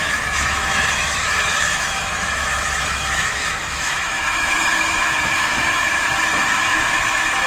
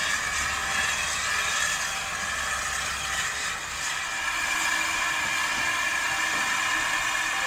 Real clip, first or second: second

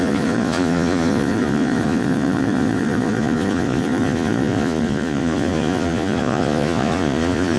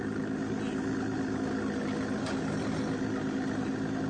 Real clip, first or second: second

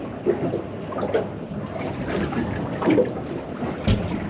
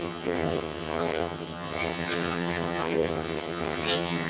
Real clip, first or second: first